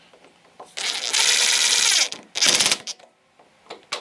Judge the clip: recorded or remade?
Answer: recorded